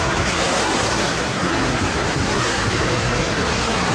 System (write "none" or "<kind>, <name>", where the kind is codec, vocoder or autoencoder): codec, SNAC